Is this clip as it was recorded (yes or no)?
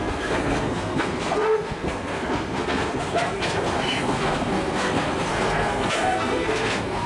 no